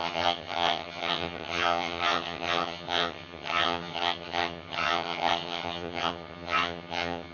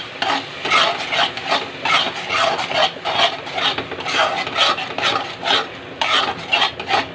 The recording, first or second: second